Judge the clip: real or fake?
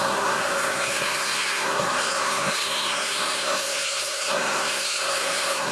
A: fake